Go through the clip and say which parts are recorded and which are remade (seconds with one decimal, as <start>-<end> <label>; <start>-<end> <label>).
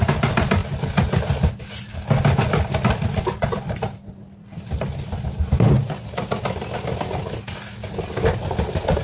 0.0-9.0 recorded